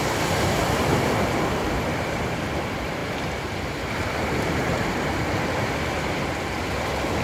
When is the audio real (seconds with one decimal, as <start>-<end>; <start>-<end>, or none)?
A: 0.0-0.9; 2.5-3.0; 4.9-7.2

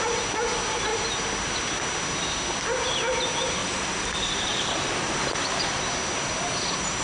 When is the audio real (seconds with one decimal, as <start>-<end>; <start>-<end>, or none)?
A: 0.0-3.6; 5.8-7.0

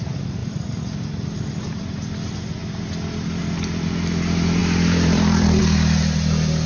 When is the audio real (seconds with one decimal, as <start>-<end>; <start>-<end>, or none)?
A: 0.0-0.4; 1.8-4.6; 5.6-6.7